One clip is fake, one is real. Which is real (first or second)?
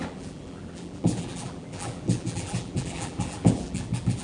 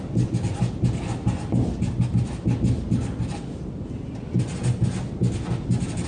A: second